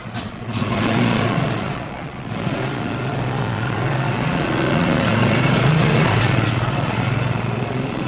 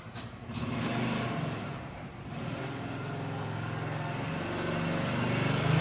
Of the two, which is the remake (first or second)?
first